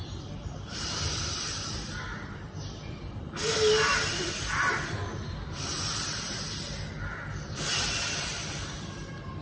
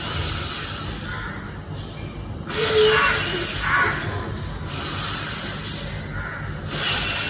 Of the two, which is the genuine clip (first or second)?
second